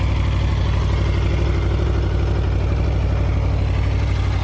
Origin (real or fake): real